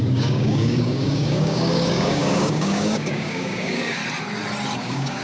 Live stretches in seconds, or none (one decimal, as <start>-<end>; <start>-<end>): 4.0-4.8